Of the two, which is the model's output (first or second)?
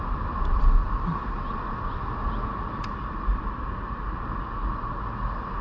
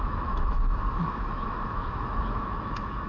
second